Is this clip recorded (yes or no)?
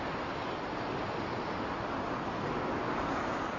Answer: yes